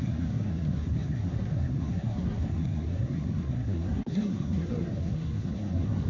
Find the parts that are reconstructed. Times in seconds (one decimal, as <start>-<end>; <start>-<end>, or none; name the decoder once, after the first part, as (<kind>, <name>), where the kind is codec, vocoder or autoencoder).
0.0-6.1 (codec, SNAC)